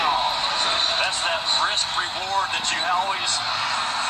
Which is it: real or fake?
real